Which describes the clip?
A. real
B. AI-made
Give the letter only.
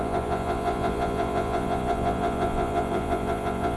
B